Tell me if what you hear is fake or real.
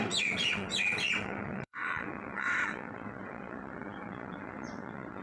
fake